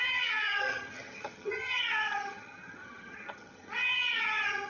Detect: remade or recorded remade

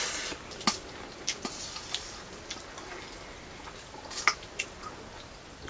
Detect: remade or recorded recorded